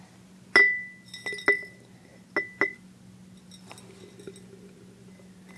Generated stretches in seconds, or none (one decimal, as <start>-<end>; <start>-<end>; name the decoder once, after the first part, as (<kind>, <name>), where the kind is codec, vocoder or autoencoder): none